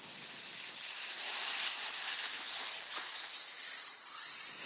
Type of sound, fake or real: real